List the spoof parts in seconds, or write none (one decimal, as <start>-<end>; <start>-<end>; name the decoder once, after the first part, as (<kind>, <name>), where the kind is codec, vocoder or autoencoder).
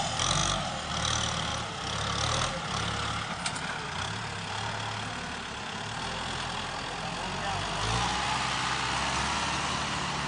none